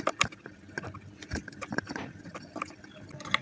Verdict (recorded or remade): recorded